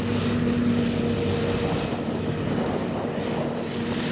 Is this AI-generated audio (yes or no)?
no